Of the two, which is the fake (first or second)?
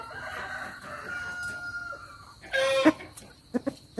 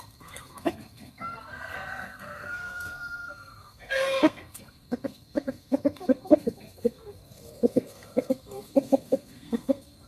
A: second